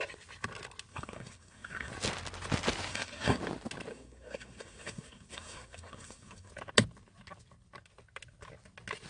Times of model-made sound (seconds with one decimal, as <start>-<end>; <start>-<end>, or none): 0.9-1.9; 2.9-3.4; 3.9-6.5